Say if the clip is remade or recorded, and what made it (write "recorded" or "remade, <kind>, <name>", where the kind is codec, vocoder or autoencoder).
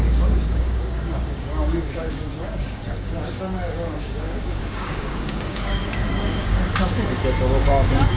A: remade, codec, DAC